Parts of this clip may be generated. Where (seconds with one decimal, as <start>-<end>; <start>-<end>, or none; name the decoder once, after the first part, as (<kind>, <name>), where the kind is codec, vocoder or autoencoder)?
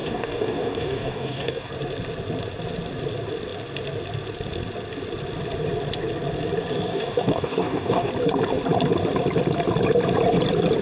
0.0-1.7 (codec, DAC); 6.9-8.1